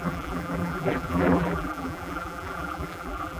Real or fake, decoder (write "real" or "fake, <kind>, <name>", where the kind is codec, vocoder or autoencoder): fake, vocoder, BigVGAN v2